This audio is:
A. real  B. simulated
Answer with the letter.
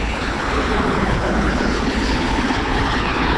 B